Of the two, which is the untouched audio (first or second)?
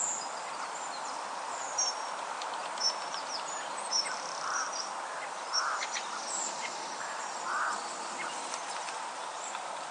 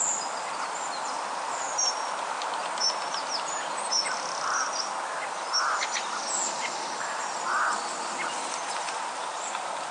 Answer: second